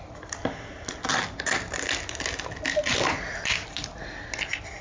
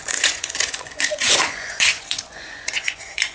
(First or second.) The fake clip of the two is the second